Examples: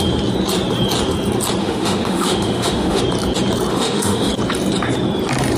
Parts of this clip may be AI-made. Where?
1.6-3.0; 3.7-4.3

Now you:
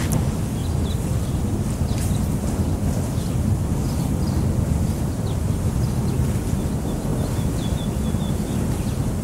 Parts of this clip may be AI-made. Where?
none

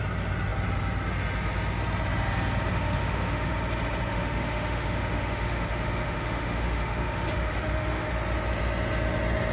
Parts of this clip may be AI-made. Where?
2.7-3.5; 4.1-8.1

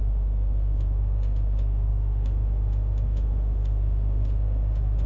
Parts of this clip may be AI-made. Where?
0.0-5.1

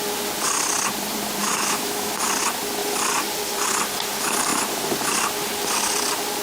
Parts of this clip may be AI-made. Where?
1.4-2.1